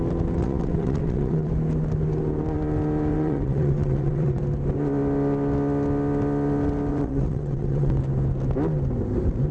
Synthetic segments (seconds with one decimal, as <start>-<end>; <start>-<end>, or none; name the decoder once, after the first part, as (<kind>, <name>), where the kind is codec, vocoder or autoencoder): 0.4-1.5 (vocoder, WaveNeXt); 3.1-4.4; 6.9-8.0